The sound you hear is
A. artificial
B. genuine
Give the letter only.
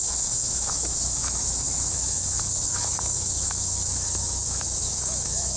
A